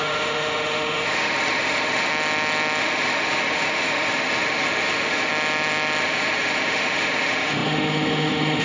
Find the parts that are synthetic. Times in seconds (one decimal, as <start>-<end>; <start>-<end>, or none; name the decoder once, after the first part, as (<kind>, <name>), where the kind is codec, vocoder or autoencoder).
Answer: 0.0-2.1 (autoencoder, DAC-VAE); 2.8-5.3; 6.0-8.6